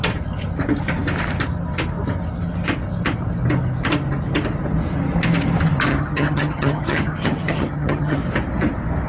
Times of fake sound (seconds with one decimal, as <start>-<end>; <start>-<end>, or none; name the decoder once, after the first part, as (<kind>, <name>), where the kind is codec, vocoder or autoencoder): 5.9-8.2 (vocoder, HiFi-GAN)